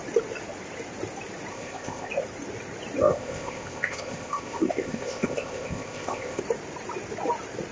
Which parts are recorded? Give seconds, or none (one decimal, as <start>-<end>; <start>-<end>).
0.0-1.5; 2.1-3.0; 6.4-7.7